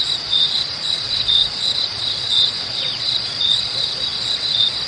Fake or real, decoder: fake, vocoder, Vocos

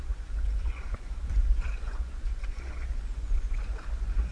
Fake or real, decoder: fake, vocoder, Vocos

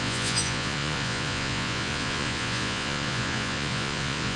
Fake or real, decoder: fake, vocoder, Vocos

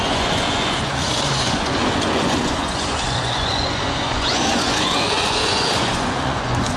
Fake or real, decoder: fake, vocoder, Vocos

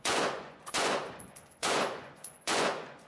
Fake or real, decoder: fake, vocoder, Vocos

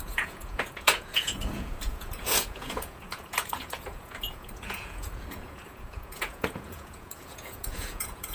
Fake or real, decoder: fake, vocoder, Vocos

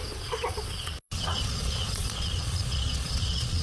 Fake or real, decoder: fake, vocoder, Vocos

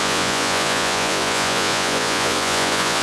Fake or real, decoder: fake, vocoder, Vocos